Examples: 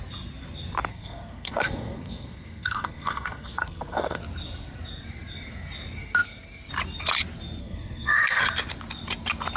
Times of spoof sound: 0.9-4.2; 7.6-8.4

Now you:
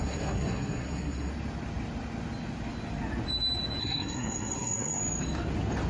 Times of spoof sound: 0.0-1.3; 3.8-5.0

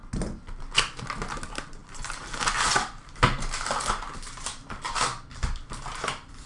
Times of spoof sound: none

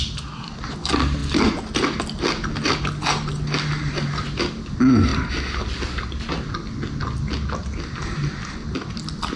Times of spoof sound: none